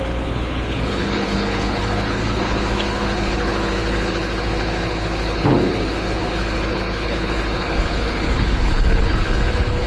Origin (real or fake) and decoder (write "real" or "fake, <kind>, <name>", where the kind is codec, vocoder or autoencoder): fake, codec, HILCodec